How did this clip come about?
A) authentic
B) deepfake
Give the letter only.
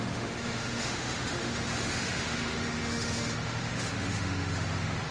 B